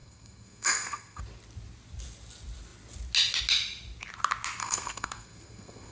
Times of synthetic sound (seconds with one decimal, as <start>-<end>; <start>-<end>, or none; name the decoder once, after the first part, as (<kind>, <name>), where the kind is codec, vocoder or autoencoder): 0.0-1.2 (codec, SNAC); 4.6-5.9